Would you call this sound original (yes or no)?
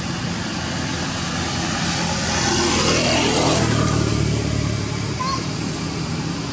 yes